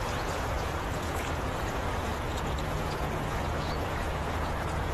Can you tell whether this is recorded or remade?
remade